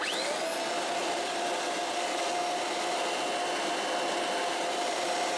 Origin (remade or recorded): recorded